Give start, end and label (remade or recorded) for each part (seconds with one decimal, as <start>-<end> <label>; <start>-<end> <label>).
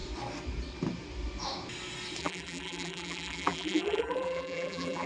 0.0-2.2 recorded; 2.2-5.1 remade